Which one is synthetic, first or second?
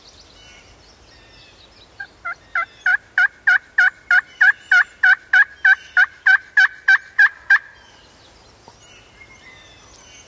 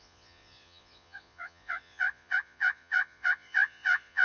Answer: second